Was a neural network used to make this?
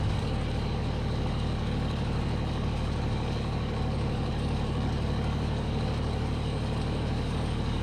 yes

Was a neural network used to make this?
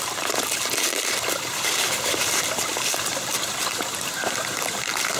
no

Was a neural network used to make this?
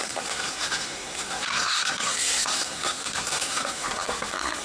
yes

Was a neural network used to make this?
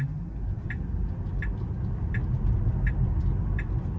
no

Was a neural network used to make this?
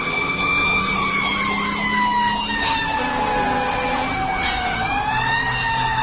no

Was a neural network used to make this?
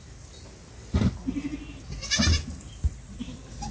no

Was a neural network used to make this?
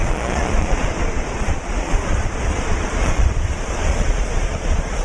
yes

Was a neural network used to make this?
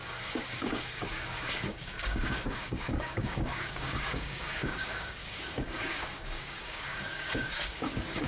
yes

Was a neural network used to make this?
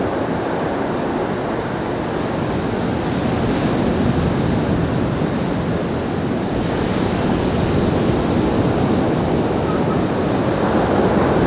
no